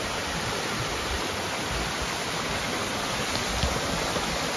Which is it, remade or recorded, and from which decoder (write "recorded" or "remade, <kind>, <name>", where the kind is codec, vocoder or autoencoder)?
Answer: recorded